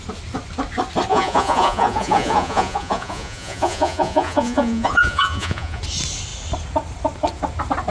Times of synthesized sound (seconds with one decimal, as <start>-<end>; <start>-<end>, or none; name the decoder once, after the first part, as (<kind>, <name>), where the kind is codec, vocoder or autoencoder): 1.1-5.8 (vocoder, Vocos)